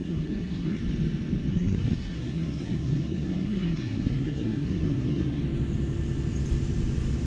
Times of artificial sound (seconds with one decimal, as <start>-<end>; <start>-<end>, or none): 0.0-0.8; 1.5-5.4